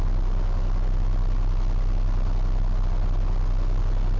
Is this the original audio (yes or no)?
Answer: yes